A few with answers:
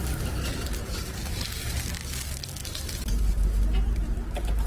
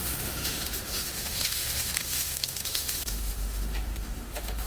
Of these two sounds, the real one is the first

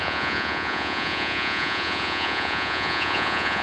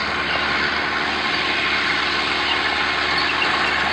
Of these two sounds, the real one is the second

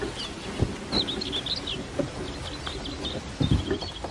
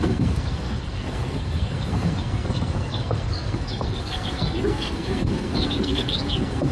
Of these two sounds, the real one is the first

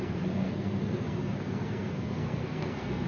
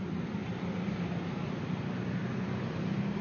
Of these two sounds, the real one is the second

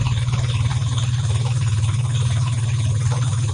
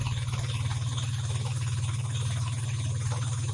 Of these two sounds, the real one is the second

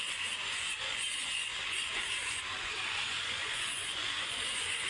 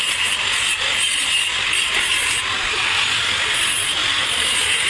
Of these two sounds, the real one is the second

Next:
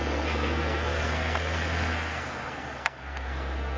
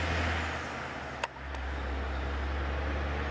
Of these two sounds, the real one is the second